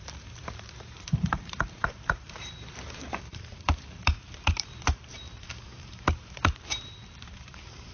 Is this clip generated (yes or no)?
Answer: yes